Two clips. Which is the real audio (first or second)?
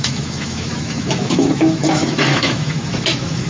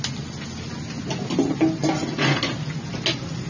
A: second